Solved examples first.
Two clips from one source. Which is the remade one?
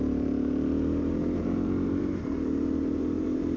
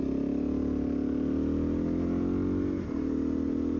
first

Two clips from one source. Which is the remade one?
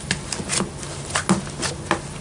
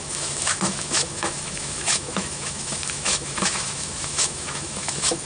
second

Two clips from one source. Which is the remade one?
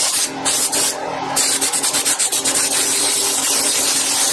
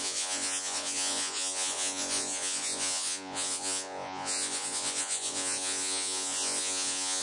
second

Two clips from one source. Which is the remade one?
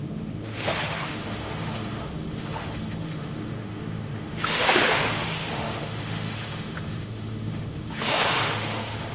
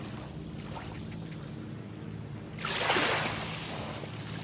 first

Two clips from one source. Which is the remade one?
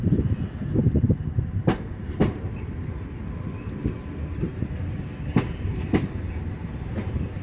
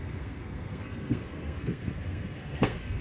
second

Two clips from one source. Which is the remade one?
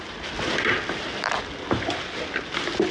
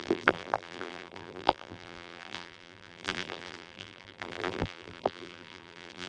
second